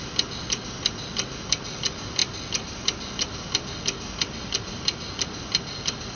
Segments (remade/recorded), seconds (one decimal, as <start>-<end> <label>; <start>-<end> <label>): 0.0-6.2 recorded